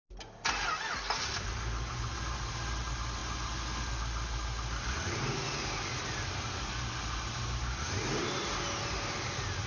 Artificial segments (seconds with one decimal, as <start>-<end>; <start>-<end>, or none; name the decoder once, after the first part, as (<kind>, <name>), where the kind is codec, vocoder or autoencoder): none